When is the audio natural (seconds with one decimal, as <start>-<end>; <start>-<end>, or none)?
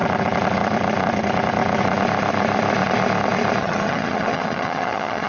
0.0-3.6